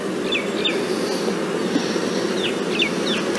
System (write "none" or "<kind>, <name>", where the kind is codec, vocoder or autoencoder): none